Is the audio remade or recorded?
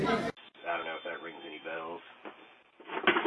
recorded